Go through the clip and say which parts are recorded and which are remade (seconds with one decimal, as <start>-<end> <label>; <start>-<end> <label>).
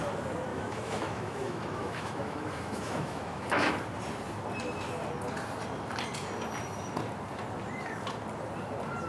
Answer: 0.0-0.5 recorded; 0.5-3.7 remade; 3.7-9.1 recorded